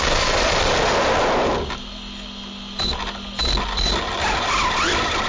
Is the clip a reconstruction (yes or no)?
no